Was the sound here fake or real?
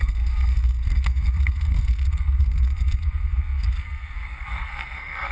fake